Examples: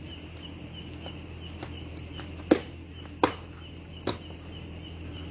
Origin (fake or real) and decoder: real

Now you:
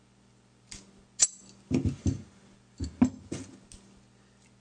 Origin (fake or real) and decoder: real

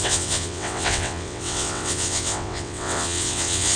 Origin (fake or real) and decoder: fake, vocoder, WaveNeXt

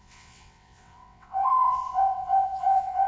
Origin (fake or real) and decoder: fake, vocoder, WaveNeXt